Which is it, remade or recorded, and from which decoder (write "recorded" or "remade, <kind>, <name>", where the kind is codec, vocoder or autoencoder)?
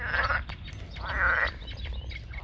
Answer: remade, vocoder, BigVGAN v2